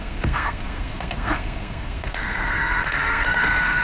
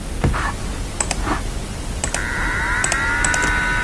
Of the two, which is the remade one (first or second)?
first